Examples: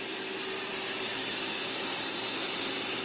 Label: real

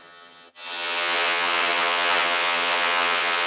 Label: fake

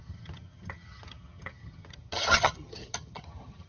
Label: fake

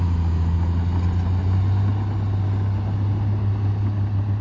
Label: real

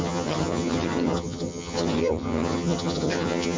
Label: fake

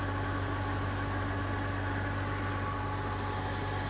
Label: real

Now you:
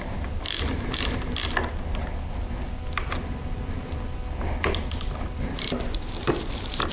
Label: real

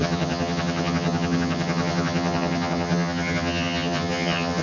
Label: fake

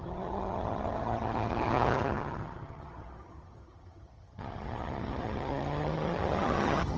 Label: fake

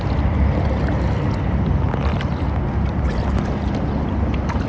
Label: real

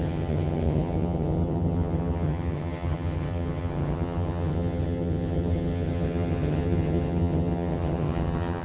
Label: fake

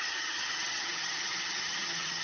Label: fake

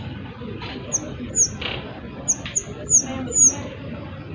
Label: real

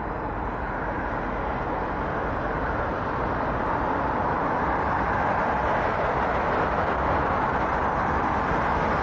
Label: real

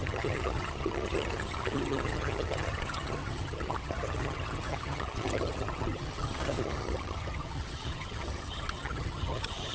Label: fake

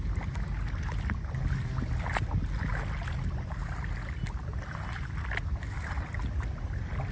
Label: real